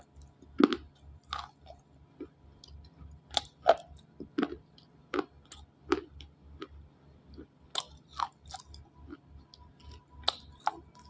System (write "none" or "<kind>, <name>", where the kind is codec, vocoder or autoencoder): none